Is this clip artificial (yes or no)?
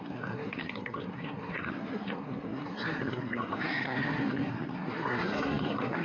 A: yes